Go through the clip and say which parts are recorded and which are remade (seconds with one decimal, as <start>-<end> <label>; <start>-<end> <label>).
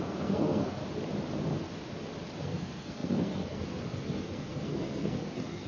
0.0-0.8 remade; 0.8-2.4 recorded; 2.4-5.7 remade